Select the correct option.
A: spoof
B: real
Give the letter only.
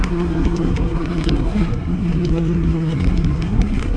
A